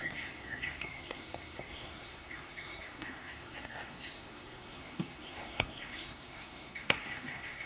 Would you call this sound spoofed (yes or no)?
yes